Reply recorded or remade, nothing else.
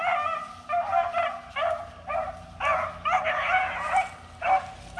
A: recorded